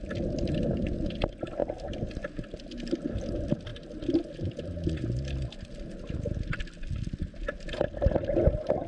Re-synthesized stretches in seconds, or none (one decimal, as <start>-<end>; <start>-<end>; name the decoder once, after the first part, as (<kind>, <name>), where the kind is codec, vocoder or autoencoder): none

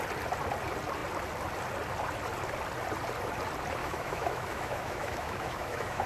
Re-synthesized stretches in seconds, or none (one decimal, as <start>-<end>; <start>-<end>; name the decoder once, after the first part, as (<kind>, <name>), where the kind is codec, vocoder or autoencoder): 3.8-6.1 (autoencoder, DAC-VAE)

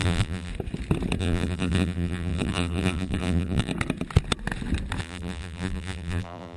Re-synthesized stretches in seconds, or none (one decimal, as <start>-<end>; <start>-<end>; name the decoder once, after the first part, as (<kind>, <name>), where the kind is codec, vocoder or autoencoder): 0.0-0.5 (vocoder, BigVGAN v2); 1.2-3.7; 5.0-6.6